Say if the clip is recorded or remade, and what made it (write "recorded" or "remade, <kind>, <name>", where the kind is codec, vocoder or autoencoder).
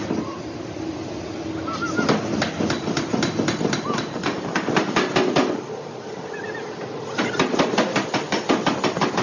recorded